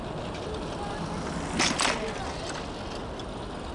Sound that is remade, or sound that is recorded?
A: recorded